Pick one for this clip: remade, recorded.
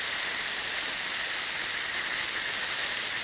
recorded